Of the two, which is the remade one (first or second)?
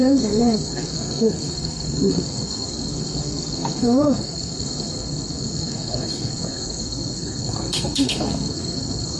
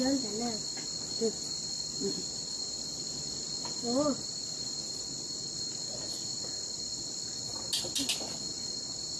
first